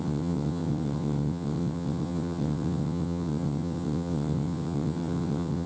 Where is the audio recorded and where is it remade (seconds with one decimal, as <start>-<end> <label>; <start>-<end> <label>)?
0.0-5.7 remade